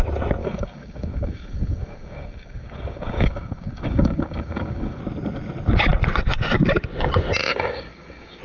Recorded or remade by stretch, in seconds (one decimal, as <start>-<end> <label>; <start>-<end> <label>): 0.0-0.4 recorded; 0.4-5.0 remade; 5.0-7.4 recorded; 7.4-8.4 remade